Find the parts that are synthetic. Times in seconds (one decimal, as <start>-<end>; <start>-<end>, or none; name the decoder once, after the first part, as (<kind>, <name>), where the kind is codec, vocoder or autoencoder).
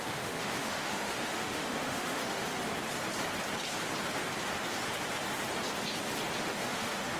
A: 0.0-2.4 (autoencoder, DAC-VAE); 6.4-7.2